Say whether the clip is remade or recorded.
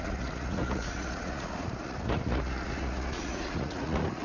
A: remade